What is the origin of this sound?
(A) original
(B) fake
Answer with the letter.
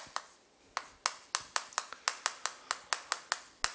A